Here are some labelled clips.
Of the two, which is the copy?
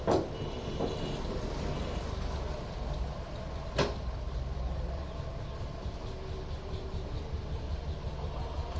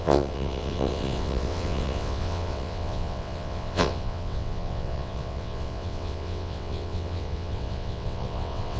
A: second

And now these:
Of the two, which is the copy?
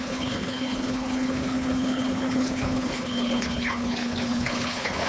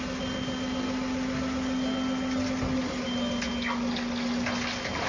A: first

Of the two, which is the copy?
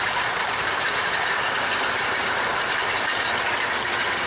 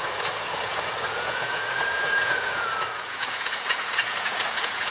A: second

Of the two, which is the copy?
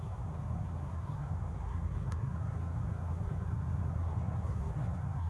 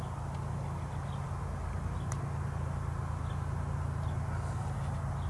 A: first